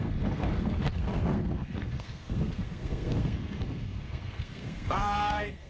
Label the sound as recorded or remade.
remade